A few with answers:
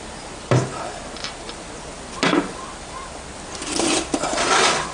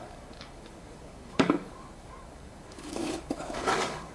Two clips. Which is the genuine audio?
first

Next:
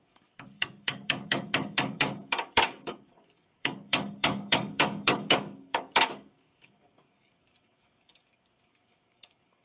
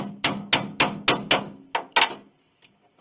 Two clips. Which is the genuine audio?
second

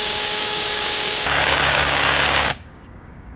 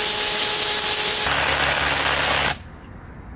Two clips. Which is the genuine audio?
second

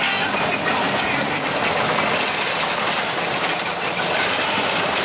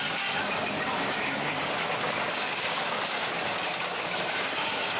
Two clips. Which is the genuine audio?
first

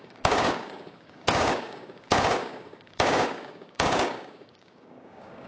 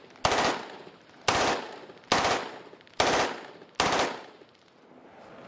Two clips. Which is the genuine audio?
second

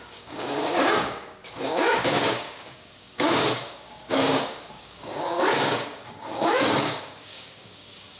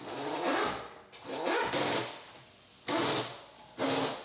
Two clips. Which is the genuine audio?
second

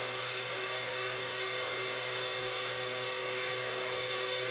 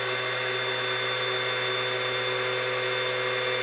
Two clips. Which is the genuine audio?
second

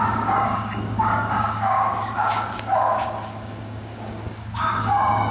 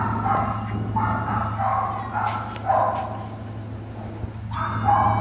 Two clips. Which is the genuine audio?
second